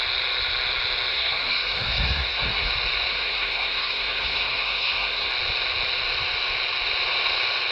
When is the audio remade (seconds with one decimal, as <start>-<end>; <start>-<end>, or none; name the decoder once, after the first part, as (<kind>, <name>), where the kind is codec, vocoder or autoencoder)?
1.1-2.7 (codec, SNAC); 3.1-5.3